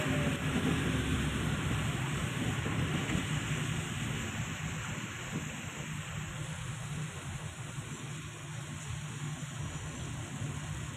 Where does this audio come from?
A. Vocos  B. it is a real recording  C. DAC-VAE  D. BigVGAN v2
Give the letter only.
B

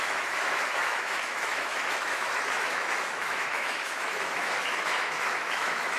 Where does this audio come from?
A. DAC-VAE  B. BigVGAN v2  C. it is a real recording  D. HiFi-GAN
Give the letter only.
A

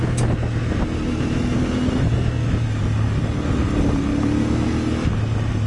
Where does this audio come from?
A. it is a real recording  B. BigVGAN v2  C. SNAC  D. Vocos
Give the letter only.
A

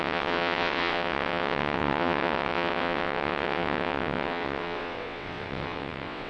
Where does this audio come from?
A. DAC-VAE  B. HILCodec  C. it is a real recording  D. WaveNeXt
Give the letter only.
D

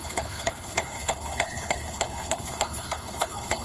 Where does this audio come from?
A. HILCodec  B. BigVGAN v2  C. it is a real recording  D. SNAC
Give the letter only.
A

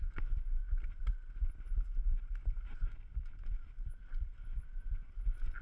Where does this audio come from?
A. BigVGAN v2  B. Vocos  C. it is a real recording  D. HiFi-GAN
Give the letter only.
C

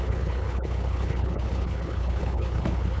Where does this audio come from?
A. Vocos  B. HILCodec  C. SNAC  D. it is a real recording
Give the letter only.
B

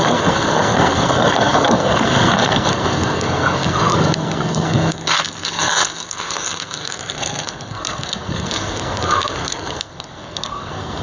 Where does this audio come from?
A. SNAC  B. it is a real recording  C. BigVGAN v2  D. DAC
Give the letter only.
A